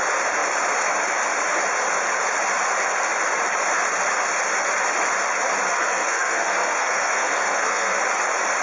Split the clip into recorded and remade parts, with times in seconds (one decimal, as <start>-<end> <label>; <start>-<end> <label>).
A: 0.0-5.7 recorded; 5.7-8.0 remade; 8.0-8.6 recorded